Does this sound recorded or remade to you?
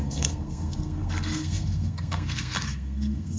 remade